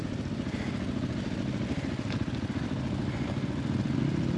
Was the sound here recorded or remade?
recorded